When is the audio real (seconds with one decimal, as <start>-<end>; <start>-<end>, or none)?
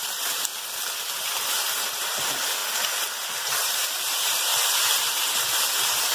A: 0.5-1.9; 4.5-5.1